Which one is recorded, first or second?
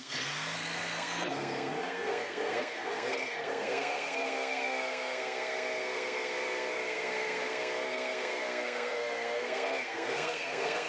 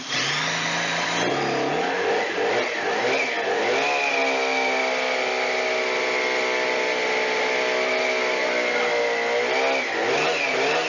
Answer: second